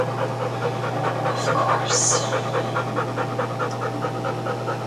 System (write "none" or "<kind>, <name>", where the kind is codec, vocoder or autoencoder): none